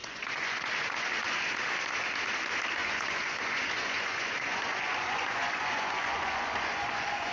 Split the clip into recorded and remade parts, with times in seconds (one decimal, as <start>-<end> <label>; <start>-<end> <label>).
0.0-0.6 remade; 0.6-2.8 recorded; 2.8-7.3 remade